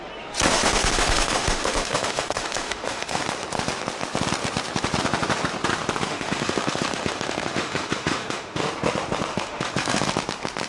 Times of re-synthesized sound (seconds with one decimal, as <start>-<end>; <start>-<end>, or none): 0.5-3.2; 6.1-8.7; 9.3-10.1